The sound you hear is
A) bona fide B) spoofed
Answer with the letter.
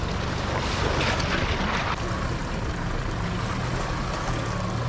A